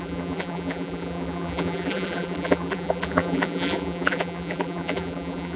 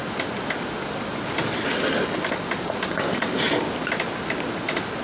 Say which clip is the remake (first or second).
first